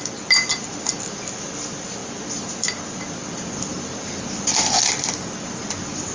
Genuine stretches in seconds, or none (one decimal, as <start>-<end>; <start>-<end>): 0.0-6.1